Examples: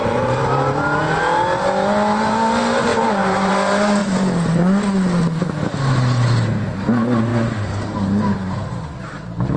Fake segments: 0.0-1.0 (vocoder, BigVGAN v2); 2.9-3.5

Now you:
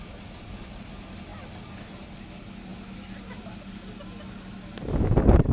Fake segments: none

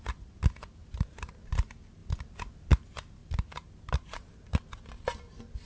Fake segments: 0.8-1.3 (vocoder, BigVGAN v2); 3.2-4.8

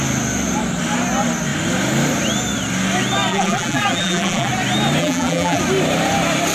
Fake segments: 3.3-4.5 (vocoder, BigVGAN v2); 5.0-5.6

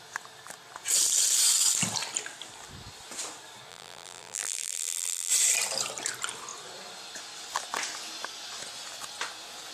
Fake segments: 3.7-5.3 (vocoder, BigVGAN v2)

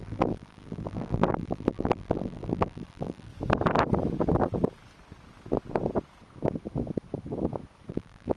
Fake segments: 0.0-3.3 (vocoder, BigVGAN v2); 7.9-8.4

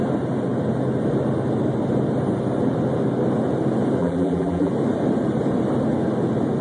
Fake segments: 4.0-4.7 (vocoder, BigVGAN v2)